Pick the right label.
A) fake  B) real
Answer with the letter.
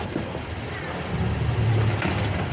B